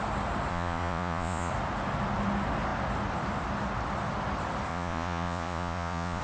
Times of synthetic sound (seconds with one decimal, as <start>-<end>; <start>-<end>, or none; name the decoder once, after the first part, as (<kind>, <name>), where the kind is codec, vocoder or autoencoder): 0.5-1.5 (vocoder, Vocos); 4.7-6.2